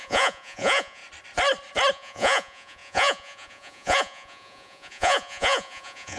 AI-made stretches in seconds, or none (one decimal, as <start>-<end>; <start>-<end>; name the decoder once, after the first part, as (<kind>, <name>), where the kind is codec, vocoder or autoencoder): 0.0-1.0 (vocoder, Vocos); 1.9-6.2